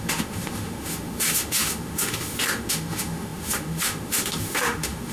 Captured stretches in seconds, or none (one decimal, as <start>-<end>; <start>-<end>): none